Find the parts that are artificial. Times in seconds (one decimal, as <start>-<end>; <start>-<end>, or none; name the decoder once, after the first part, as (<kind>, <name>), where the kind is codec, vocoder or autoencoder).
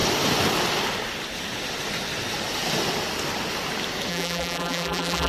4.1-5.3 (vocoder, BigVGAN v2)